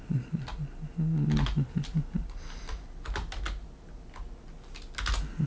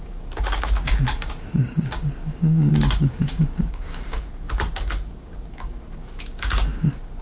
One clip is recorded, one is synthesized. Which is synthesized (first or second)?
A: second